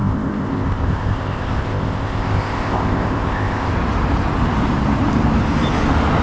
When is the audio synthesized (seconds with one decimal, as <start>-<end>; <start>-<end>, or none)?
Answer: 0.0-3.7